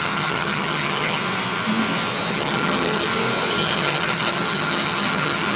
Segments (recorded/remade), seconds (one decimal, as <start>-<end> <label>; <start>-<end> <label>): 0.0-1.2 remade; 1.2-2.3 recorded; 2.3-3.1 remade; 3.1-3.6 recorded; 3.6-5.6 remade